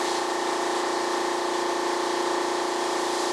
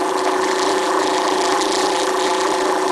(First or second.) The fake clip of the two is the second